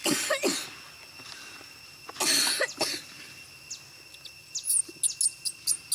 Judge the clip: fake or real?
real